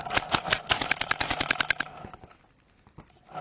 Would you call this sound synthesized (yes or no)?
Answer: no